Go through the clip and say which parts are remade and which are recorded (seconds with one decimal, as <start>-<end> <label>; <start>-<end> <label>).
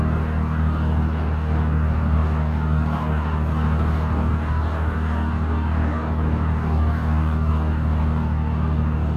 0.0-9.2 remade